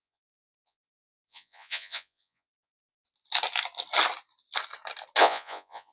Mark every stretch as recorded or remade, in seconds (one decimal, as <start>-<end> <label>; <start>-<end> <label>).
0.0-2.8 remade; 2.8-5.2 recorded; 5.2-5.9 remade